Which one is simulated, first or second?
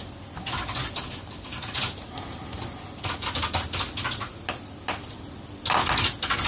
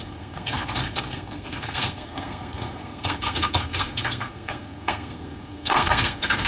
second